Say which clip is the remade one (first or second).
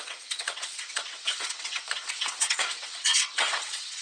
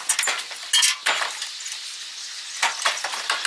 first